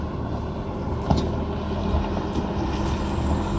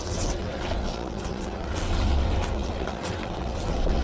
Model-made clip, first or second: second